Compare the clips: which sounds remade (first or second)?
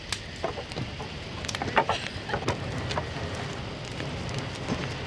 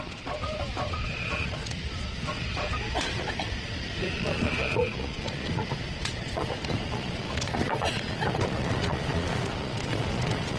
second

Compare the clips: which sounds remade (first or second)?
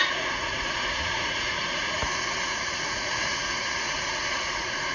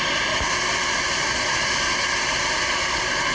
first